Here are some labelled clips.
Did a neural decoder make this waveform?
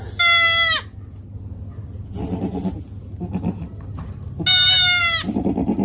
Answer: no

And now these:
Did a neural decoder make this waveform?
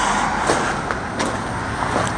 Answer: no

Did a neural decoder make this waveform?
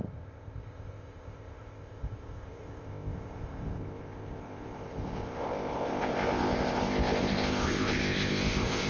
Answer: yes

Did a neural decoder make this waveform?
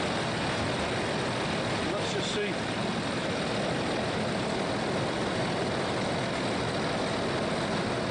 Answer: no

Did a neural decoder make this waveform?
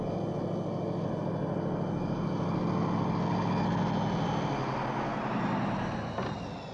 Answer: no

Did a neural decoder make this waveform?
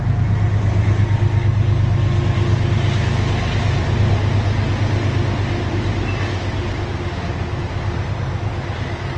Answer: no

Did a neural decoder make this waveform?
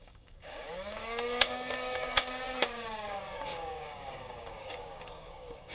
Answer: yes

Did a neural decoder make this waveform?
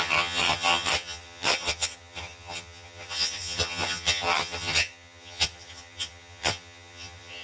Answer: yes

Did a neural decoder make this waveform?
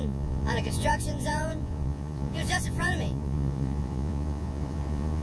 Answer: yes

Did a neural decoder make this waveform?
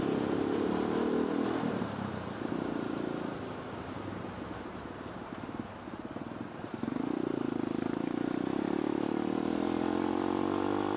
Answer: no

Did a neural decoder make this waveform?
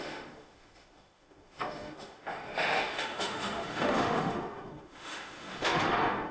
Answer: yes